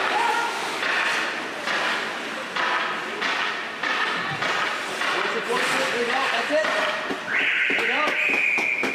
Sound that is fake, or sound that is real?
real